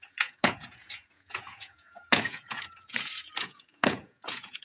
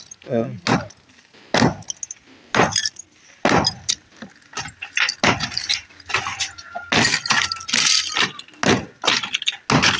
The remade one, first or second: first